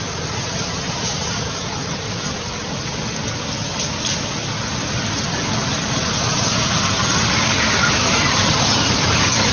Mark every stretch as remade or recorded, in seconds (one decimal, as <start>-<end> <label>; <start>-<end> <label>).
0.0-2.9 remade; 2.9-7.9 recorded; 7.9-9.5 remade